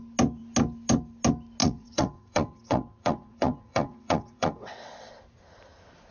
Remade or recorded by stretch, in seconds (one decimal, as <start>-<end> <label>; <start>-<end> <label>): 0.0-1.6 recorded; 1.6-5.1 remade; 5.1-6.1 recorded